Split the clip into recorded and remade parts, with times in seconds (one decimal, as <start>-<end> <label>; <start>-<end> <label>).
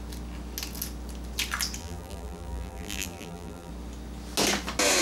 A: 0.0-1.8 recorded; 1.8-3.7 remade; 3.7-5.0 recorded